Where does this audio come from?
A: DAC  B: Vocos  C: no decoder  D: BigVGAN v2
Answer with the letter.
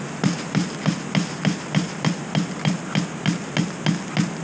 C